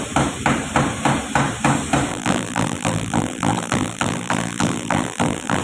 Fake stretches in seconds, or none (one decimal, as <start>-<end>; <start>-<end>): 2.1-5.6